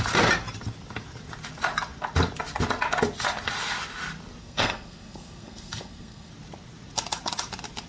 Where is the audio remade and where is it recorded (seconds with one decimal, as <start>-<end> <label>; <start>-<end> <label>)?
0.0-4.4 recorded; 4.4-6.3 remade; 6.3-7.9 recorded